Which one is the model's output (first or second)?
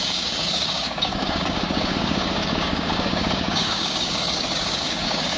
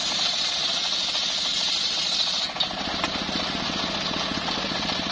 first